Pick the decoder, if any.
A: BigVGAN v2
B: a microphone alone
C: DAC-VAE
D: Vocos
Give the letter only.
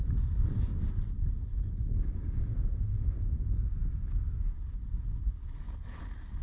B